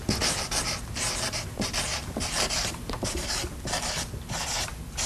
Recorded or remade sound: remade